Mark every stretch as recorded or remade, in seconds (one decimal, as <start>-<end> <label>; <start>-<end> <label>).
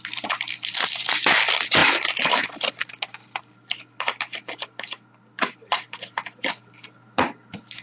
0.0-7.8 recorded